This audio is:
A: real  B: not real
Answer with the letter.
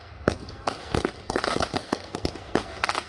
B